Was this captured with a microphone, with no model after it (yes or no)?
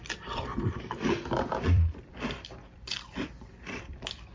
no